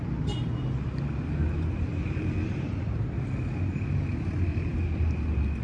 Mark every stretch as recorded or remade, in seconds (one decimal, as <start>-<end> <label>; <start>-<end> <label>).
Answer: 0.0-1.9 recorded; 1.9-3.6 remade; 3.6-5.6 recorded